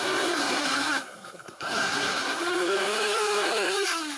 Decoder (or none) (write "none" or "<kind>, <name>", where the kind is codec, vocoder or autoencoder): codec, SNAC